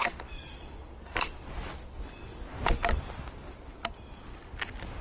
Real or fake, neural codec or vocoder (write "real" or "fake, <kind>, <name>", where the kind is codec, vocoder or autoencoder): real